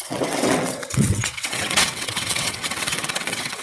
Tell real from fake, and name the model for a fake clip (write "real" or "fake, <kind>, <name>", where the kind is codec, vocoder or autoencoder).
fake, vocoder, WaveNeXt